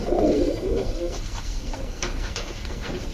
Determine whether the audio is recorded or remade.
remade